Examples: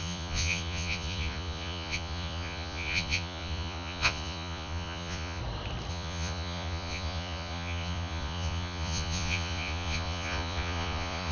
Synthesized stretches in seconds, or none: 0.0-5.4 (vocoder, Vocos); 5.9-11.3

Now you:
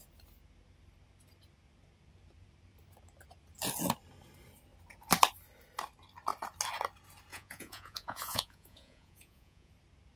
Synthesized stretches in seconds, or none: 7.3-9.7 (vocoder, Vocos)

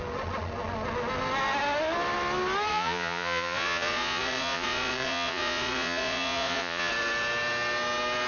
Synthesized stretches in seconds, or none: 2.7-6.9 (vocoder, Vocos)

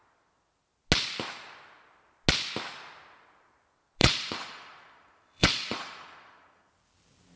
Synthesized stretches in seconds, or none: 4.0-6.7 (vocoder, Vocos)

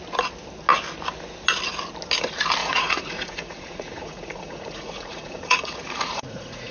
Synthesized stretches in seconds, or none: 2.6-6.7 (vocoder, Vocos)

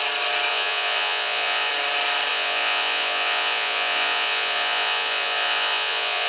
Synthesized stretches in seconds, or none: 0.5-1.7 (vocoder, Vocos); 2.3-6.3

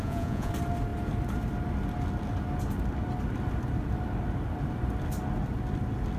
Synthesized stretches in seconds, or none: 0.0-0.5 (vocoder, Vocos)